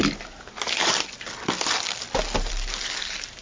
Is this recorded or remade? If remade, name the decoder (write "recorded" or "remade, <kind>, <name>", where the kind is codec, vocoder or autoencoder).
recorded